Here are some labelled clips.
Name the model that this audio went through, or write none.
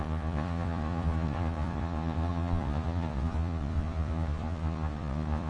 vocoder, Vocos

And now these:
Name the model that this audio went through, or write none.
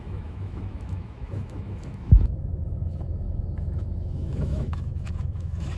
autoencoder, DAC-VAE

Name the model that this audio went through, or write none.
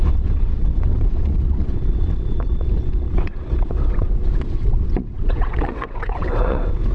vocoder, WaveNeXt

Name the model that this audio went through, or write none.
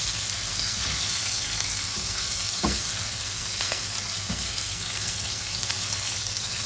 codec, SNAC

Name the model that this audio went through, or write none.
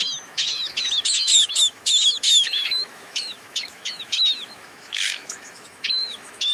autoencoder, DAC-VAE